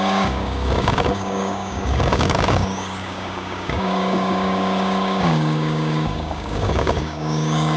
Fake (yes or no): yes